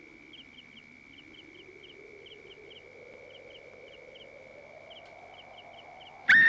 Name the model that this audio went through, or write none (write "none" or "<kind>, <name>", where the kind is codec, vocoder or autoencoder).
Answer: none